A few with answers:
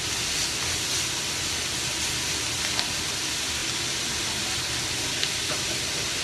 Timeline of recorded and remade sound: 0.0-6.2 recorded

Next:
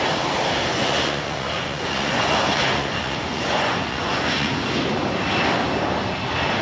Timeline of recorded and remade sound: 0.0-0.7 recorded; 0.7-4.6 remade; 4.6-6.6 recorded

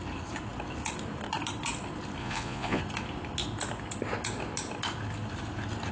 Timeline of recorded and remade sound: 0.0-2.2 recorded; 2.2-2.8 remade; 2.8-5.9 recorded

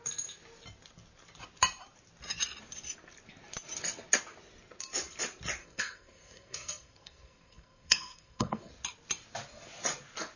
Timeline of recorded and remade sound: 0.0-5.6 recorded; 5.6-8.7 remade; 8.7-10.4 recorded

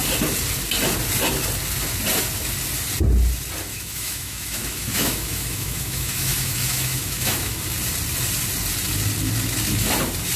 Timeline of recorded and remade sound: 0.0-3.7 recorded; 3.7-7.6 remade; 7.6-10.4 recorded

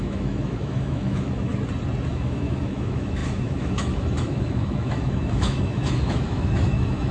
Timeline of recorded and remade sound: 0.0-1.5 remade; 1.5-2.1 recorded; 2.1-7.1 remade